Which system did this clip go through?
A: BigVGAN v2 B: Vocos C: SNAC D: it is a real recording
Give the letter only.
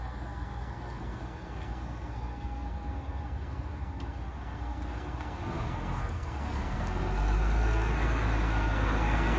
C